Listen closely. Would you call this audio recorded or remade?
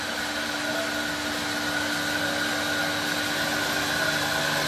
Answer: recorded